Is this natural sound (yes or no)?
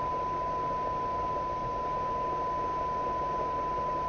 yes